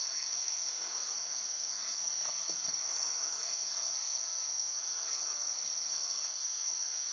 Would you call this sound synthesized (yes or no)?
yes